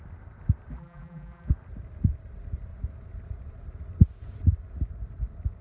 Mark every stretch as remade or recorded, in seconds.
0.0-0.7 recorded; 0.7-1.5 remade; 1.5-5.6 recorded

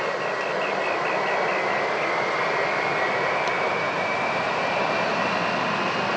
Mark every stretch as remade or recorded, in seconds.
0.0-3.1 recorded; 3.1-5.1 remade; 5.1-6.2 recorded

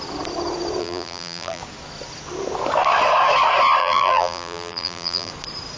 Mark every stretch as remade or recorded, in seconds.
0.0-0.8 recorded; 0.8-1.6 remade; 1.6-3.8 recorded; 3.8-5.3 remade; 5.3-5.8 recorded

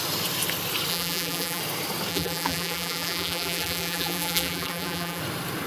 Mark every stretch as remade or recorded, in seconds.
0.0-0.9 recorded; 0.9-1.6 remade; 1.6-2.1 recorded; 2.1-5.2 remade; 5.2-5.7 recorded

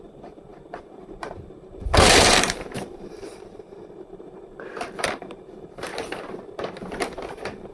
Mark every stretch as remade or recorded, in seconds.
0.0-5.9 remade; 5.9-7.3 recorded; 7.3-7.7 remade